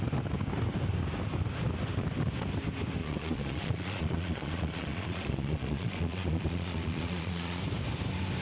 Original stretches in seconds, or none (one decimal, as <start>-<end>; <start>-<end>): 0.0-3.0; 7.6-8.4